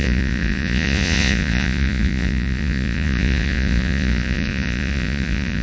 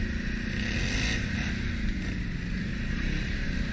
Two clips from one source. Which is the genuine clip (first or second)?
second